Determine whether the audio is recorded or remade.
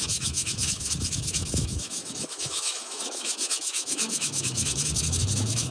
remade